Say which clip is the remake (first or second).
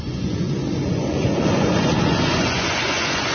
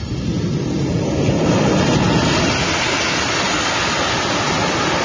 first